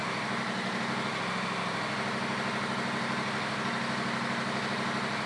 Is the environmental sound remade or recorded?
recorded